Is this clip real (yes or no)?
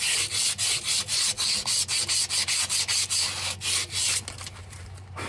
yes